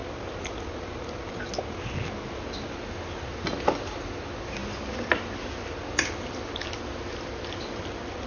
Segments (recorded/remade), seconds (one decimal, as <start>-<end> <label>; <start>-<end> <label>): 0.0-8.3 recorded